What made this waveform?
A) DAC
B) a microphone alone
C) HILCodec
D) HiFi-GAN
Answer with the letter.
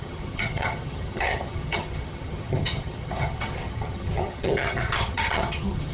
D